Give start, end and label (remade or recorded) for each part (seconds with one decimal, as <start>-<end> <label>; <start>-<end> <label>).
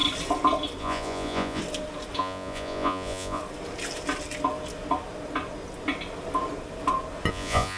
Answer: 0.0-0.8 recorded; 0.8-1.6 remade; 1.6-2.2 recorded; 2.2-3.4 remade; 3.4-7.3 recorded; 7.3-7.8 remade